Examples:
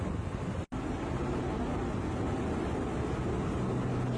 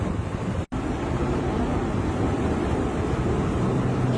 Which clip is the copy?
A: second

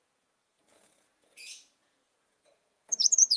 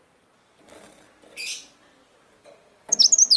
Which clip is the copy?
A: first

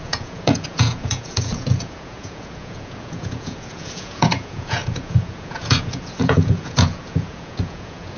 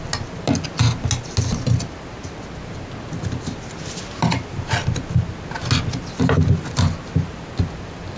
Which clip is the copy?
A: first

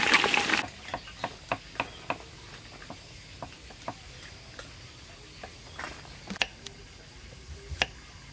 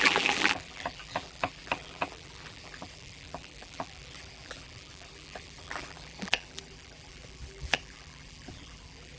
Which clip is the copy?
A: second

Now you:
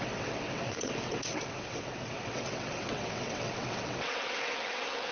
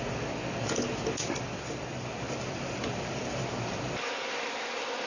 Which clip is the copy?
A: first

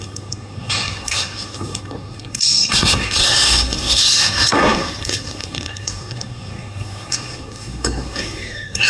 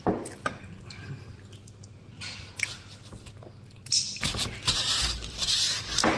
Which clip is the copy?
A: first